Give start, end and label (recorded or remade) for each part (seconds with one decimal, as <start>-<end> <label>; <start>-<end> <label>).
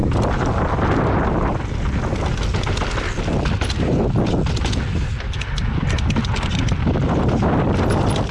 0.0-8.3 recorded